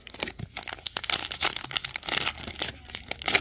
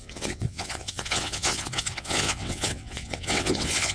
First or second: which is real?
first